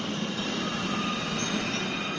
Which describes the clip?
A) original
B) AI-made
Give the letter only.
A